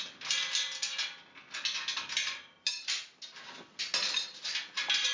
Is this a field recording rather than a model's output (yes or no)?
yes